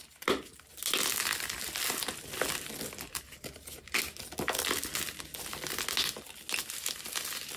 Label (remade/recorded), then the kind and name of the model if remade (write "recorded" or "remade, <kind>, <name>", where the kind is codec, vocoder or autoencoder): recorded